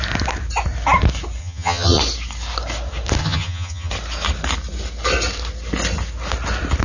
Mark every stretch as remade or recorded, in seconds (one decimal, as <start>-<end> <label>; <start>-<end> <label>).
0.0-1.4 recorded; 1.4-2.0 remade; 2.0-3.2 recorded; 3.2-3.9 remade; 3.9-6.8 recorded